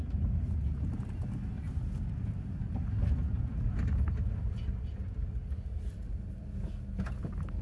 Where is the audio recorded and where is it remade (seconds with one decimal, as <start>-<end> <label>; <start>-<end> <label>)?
0.0-1.5 recorded; 1.5-2.1 remade; 2.1-7.6 recorded